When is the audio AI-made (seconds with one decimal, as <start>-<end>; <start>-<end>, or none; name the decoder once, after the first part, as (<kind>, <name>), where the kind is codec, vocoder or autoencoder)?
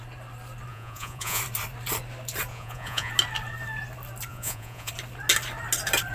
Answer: 0.7-1.4 (vocoder, Vocos); 2.5-3.1; 4.3-4.9